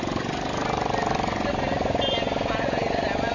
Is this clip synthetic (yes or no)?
no